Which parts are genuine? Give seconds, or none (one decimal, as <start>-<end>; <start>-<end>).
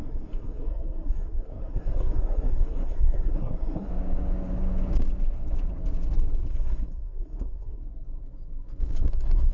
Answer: 3.9-6.5; 7.8-9.1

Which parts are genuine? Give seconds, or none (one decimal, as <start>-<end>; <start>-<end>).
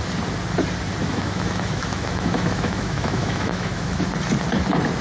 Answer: 0.0-1.0; 4.0-5.0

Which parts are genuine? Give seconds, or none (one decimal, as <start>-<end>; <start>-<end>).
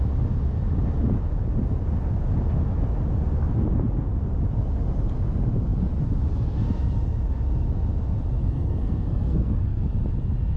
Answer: 0.0-8.4; 9.9-10.6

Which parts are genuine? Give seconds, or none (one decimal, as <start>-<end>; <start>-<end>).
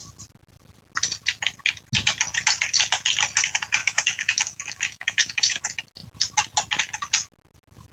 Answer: 0.0-3.8; 5.6-7.9